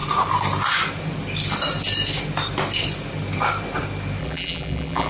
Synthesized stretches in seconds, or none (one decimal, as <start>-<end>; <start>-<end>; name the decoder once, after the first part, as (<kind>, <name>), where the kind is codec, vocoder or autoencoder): 4.2-5.1 (vocoder, BigVGAN v2)